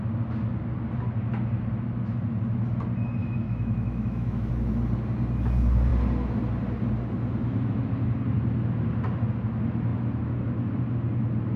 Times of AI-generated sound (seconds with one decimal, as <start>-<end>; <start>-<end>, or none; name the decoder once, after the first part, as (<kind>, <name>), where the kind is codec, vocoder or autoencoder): 3.2-4.5 (autoencoder, DAC-VAE)